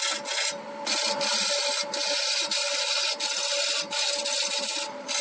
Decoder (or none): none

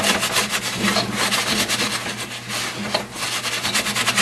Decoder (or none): none